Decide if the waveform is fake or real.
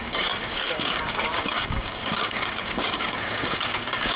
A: fake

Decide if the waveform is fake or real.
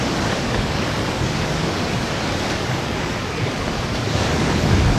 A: fake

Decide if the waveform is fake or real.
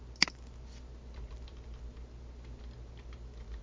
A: real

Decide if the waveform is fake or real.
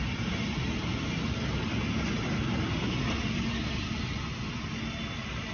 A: real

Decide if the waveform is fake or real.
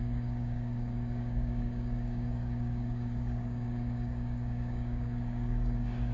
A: fake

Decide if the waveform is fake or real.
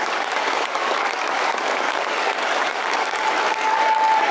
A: fake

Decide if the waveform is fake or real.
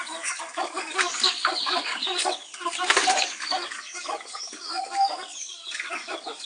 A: fake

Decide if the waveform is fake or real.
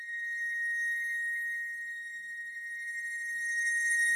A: fake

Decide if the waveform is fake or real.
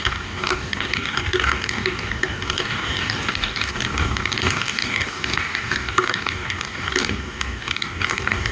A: fake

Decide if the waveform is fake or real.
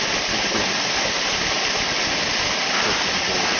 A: real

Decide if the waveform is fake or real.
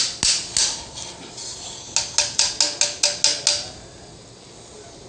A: real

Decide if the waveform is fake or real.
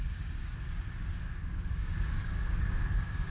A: fake